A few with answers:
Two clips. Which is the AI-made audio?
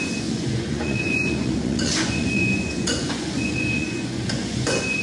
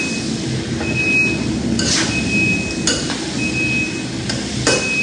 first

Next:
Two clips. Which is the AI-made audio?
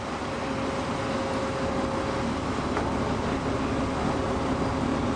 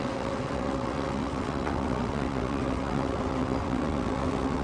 second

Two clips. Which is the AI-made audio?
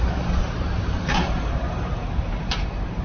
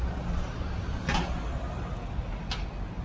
first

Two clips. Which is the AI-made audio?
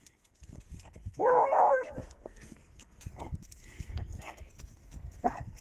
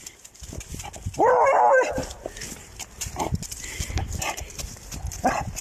first